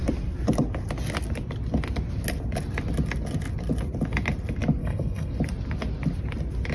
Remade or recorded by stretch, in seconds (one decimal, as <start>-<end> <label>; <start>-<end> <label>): 0.0-4.8 recorded; 4.8-5.4 remade; 5.4-6.7 recorded